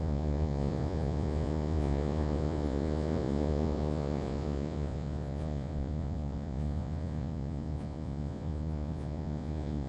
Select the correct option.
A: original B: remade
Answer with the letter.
B